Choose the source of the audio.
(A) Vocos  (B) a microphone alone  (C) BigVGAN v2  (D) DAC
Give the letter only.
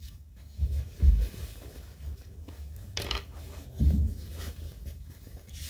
D